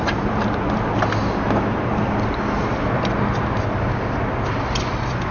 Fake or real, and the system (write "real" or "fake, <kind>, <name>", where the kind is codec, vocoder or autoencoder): real